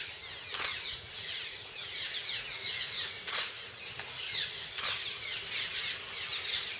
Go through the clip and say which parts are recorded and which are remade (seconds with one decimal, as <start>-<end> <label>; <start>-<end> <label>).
0.0-0.7 recorded; 0.7-3.8 remade; 3.8-6.8 recorded